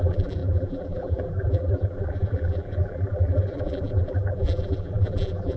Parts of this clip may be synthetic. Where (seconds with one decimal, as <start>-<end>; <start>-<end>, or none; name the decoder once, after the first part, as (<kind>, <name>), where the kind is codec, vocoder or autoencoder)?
0.0-5.6 (vocoder, BigVGAN v2)